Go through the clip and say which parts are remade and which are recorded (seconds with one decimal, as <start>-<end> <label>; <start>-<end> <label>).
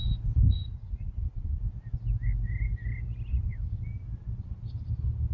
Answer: 0.0-0.5 recorded; 0.5-1.6 remade; 1.6-3.3 recorded; 3.3-3.8 remade; 3.8-5.3 recorded